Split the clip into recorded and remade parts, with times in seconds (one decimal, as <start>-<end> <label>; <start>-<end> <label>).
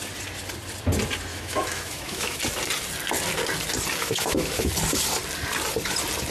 0.0-1.3 recorded; 1.3-2.4 remade; 2.4-4.0 recorded; 4.0-4.7 remade; 4.7-6.3 recorded